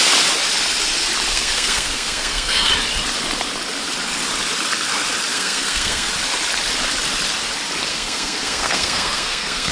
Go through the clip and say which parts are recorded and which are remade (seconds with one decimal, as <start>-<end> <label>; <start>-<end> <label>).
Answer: 0.0-1.3 recorded; 1.3-2.7 remade; 2.7-5.3 recorded; 5.3-6.1 remade; 6.1-7.9 recorded; 7.9-9.7 remade